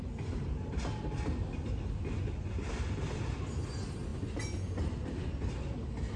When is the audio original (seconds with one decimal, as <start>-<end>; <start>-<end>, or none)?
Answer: 0.0-6.2